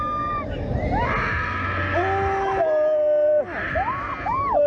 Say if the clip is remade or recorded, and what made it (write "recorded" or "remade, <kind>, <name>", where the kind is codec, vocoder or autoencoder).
recorded